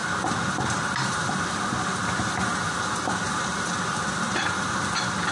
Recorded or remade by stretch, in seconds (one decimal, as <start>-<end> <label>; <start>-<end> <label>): 0.0-0.6 remade; 0.6-2.5 recorded; 2.5-4.7 remade; 4.7-5.3 recorded